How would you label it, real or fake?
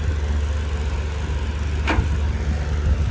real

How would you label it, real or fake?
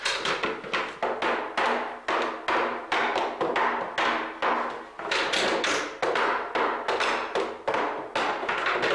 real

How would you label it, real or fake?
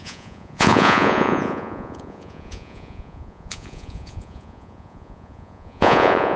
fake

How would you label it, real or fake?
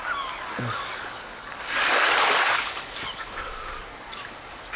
fake